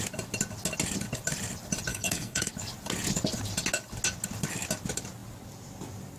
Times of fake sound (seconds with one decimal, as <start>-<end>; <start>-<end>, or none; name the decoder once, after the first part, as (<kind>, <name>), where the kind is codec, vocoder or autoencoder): 1.9-2.5 (codec, SNAC)